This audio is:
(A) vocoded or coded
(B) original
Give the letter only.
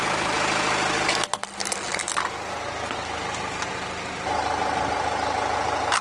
B